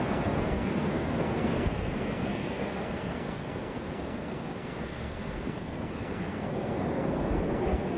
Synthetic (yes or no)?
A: yes